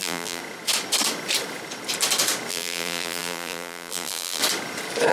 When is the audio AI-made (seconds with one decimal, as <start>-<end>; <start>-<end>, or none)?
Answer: 0.0-0.4; 2.5-4.4